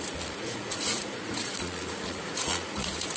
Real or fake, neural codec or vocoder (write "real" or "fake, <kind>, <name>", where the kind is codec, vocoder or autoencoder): fake, vocoder, Vocos